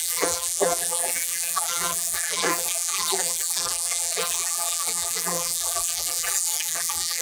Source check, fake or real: fake